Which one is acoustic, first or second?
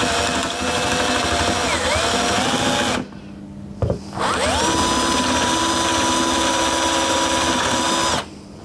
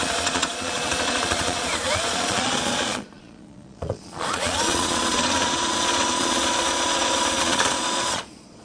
first